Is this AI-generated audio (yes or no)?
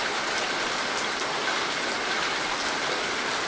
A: no